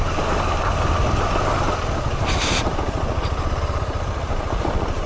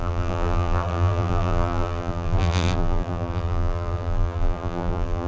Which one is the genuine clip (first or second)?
first